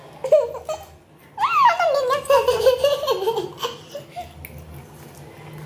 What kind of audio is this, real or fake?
real